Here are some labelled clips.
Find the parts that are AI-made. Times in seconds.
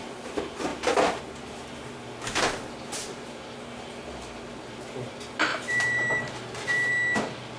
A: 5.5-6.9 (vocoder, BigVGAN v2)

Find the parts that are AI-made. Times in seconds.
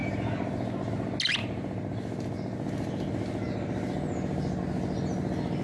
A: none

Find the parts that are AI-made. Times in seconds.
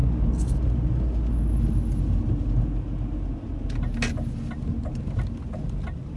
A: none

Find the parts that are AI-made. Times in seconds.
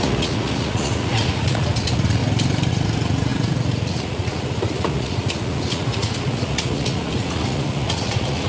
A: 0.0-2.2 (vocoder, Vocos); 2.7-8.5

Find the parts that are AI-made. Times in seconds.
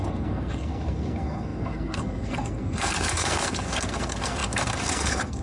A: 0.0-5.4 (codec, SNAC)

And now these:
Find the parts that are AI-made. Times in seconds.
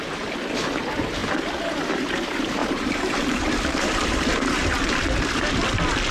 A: 2.6-4.9 (vocoder, BigVGAN v2)